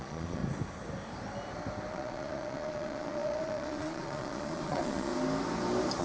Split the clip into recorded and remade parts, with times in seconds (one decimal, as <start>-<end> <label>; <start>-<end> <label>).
0.0-0.4 remade; 0.4-1.9 recorded; 1.9-5.1 remade; 5.1-6.0 recorded